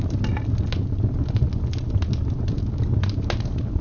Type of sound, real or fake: real